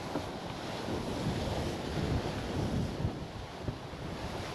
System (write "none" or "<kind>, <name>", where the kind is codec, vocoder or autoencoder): none